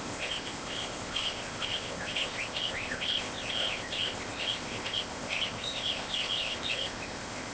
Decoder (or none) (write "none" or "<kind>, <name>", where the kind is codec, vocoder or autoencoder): codec, ZipCodec